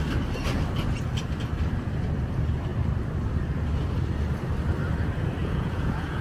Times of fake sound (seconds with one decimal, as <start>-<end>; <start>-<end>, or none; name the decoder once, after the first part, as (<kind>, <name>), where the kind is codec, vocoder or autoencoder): 5.4-6.2 (vocoder, Vocos)